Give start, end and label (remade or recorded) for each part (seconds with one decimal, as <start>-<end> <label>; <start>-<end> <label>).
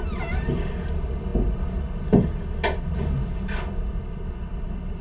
0.0-5.0 recorded